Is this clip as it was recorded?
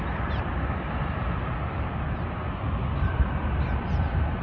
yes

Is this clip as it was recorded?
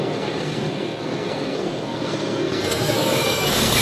no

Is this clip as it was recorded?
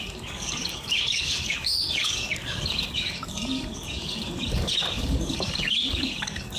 no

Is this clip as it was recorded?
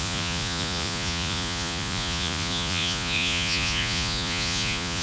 no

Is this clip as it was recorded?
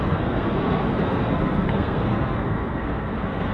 no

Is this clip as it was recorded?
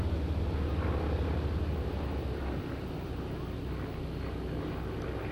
yes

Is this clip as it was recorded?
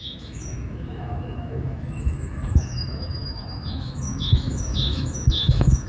no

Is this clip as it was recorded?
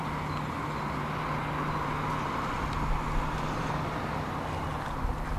yes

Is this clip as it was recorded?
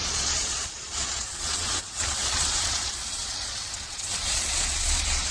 no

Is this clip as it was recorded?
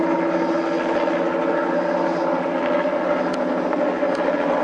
yes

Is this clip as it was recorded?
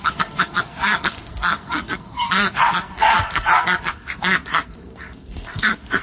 no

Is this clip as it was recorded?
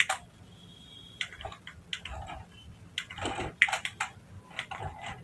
yes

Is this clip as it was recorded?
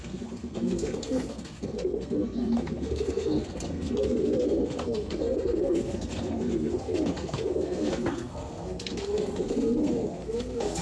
no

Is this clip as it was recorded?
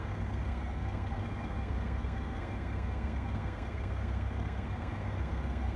no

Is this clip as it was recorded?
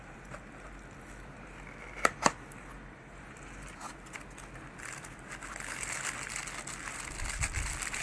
yes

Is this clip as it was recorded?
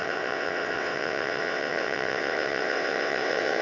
no